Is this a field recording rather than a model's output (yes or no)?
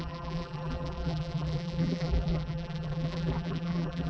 no